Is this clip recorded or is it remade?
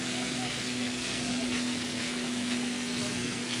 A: remade